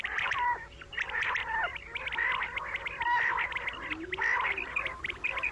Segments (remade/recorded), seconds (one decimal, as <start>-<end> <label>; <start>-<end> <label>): 0.0-1.7 remade; 1.7-5.0 recorded; 5.0-5.5 remade